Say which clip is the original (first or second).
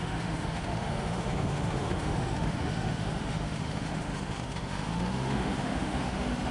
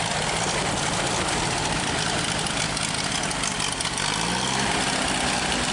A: second